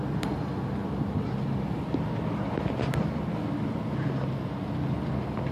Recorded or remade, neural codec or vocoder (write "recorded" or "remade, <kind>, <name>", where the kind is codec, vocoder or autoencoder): remade, vocoder, BigVGAN v2